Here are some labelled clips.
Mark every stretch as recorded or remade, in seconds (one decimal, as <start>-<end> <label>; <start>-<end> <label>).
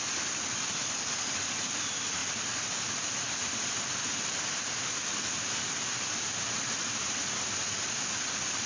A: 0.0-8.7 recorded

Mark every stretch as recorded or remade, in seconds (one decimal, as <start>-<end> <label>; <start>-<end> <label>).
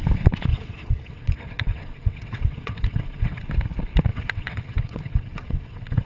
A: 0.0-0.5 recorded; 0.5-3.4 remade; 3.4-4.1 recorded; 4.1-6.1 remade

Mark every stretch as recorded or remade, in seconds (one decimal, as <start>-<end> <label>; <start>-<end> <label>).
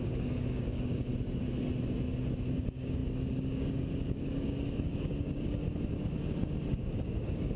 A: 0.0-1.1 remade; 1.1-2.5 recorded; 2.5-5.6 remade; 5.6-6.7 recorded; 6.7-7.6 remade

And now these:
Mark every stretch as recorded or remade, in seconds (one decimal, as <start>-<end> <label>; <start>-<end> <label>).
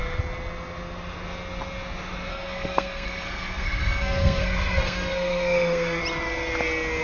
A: 0.0-2.3 recorded; 2.3-6.0 remade; 6.0-7.0 recorded